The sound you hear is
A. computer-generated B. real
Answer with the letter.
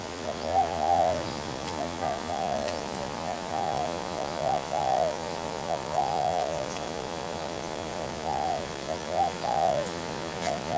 A